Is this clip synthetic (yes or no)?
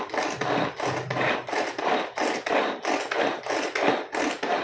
no